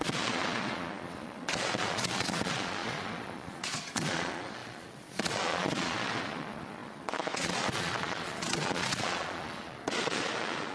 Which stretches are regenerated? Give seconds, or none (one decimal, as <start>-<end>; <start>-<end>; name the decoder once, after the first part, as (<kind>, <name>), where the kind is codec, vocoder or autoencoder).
0.0-10.7 (vocoder, Vocos)